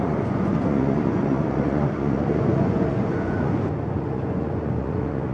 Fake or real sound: fake